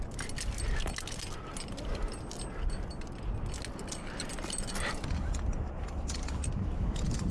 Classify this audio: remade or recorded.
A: recorded